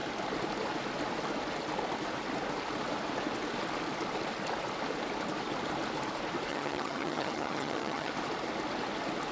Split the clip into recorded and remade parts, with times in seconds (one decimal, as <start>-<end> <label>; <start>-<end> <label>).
0.0-6.5 recorded; 6.5-8.1 remade; 8.1-9.3 recorded